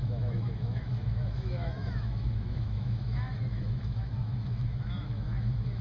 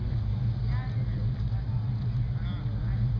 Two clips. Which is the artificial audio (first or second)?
first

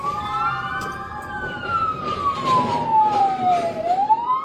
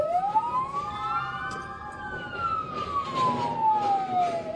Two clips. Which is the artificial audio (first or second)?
first